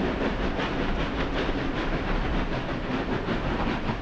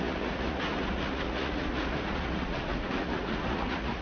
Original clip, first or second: first